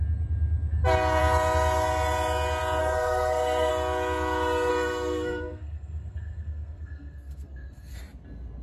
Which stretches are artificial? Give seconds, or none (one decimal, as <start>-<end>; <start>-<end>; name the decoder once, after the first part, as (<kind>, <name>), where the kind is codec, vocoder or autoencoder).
2.8-3.7 (codec, SNAC); 4.7-8.0